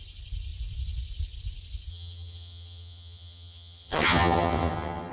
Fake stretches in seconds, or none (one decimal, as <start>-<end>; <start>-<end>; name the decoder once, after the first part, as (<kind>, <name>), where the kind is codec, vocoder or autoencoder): 1.9-5.1 (vocoder, HiFi-GAN)